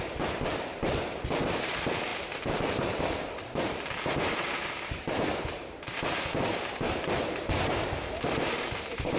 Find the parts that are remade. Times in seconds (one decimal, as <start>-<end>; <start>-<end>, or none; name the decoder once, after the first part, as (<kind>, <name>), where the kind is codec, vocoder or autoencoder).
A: 0.0-9.2 (vocoder, BigVGAN v2)